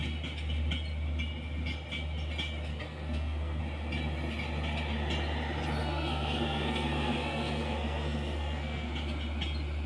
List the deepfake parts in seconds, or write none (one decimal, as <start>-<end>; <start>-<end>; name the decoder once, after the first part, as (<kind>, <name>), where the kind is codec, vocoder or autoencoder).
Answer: 2.7-3.6 (codec, SNAC); 5.8-8.9